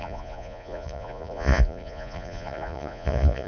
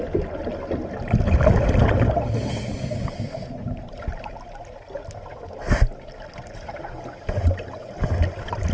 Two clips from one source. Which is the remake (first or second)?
first